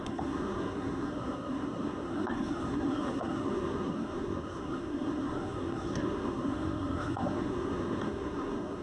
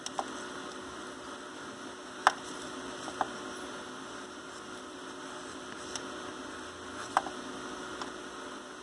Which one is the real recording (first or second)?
second